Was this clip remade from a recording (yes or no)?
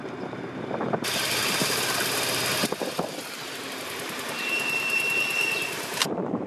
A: yes